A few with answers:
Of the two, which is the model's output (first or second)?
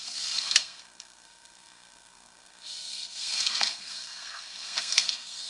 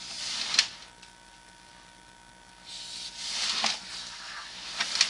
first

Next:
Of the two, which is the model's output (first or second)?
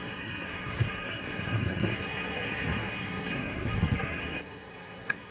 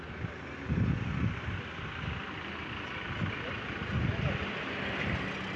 first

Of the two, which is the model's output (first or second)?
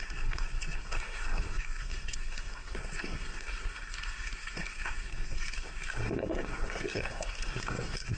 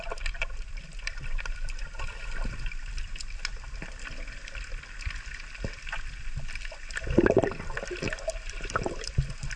first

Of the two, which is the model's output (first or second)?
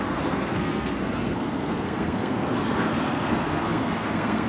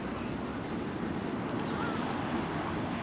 first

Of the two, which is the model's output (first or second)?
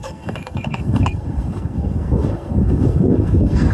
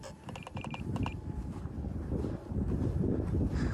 first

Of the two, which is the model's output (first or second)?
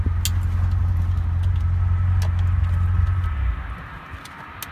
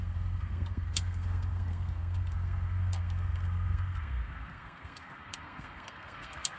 second